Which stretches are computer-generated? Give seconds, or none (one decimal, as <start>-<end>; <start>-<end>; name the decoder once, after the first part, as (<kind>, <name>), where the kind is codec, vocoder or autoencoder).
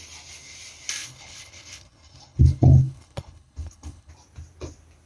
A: 1.0-4.1 (codec, HILCodec)